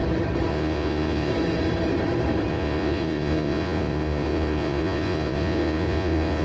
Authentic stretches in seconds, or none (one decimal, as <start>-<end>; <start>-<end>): 0.0-0.5; 1.3-2.5